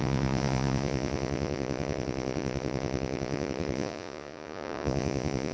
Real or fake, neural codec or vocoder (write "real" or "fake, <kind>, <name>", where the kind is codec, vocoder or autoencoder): fake, vocoder, Vocos